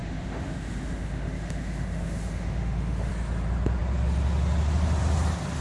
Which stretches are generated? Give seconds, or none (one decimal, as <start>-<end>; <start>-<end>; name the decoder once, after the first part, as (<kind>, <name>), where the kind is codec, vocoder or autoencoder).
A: 0.0-3.1 (autoencoder, DAC-VAE)